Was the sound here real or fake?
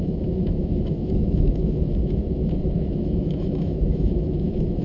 fake